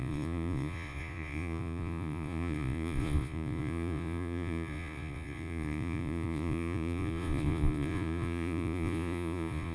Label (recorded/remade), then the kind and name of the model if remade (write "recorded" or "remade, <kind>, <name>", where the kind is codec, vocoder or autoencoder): remade, vocoder, Vocos